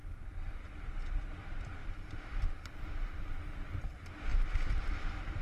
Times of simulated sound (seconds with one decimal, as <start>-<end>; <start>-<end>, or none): 0.0-0.6; 1.8-3.3; 4.3-5.0